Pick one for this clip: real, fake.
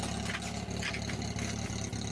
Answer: real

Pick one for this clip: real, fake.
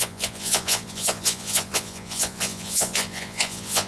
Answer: fake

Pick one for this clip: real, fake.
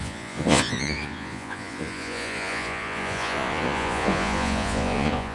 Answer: fake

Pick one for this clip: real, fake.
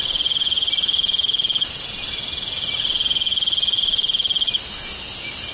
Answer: real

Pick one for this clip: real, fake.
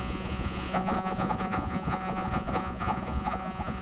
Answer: fake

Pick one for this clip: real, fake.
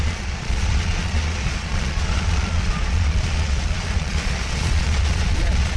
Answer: fake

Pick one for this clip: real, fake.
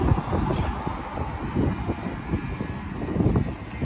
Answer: real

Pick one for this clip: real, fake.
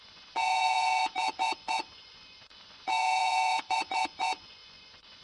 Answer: fake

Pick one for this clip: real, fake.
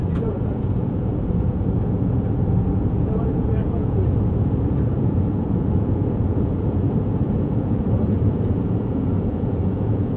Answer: fake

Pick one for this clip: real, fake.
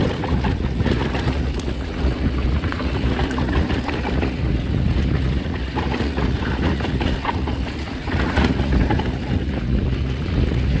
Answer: fake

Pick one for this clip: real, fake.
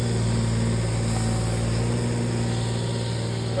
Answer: real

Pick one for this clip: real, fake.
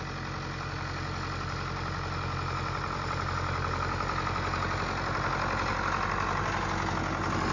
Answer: real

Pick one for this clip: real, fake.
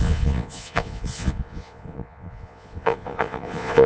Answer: fake